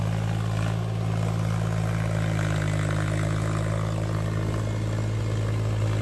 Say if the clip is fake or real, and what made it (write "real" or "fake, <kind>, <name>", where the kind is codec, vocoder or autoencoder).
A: real